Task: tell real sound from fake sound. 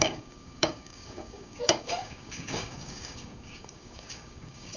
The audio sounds fake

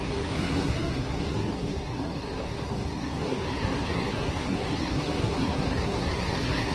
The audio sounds fake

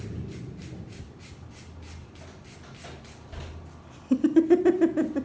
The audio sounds real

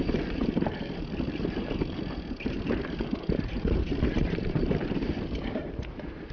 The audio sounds fake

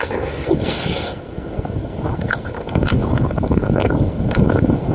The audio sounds fake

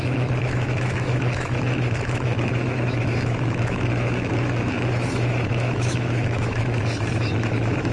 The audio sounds fake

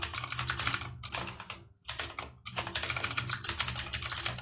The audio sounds real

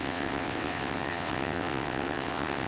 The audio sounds fake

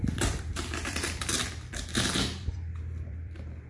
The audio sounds fake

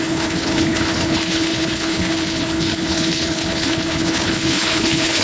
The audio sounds fake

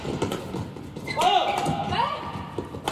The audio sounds real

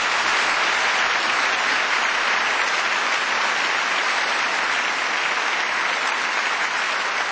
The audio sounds real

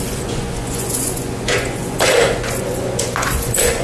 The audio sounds fake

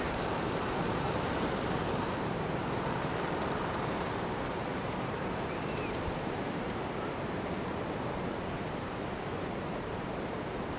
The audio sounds fake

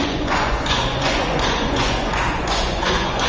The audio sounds fake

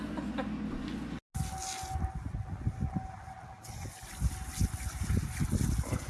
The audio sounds real